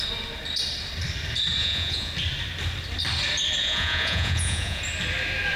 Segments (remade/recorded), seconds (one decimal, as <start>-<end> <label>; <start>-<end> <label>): 0.0-1.6 recorded; 1.6-2.1 remade; 2.1-3.6 recorded; 3.6-4.8 remade; 4.8-5.6 recorded